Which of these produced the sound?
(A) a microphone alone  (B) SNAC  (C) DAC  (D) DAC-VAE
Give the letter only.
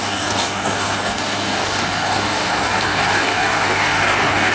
C